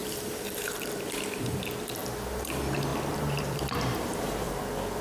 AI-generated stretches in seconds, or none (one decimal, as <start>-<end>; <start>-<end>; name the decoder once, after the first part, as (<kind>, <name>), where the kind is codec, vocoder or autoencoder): 0.0-1.6 (vocoder, BigVGAN v2); 2.0-2.5; 2.9-4.6